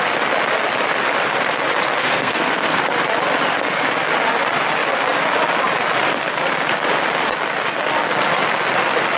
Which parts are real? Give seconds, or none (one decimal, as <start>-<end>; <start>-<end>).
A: 0.0-2.0; 2.8-9.2